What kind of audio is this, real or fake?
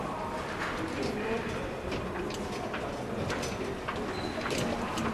real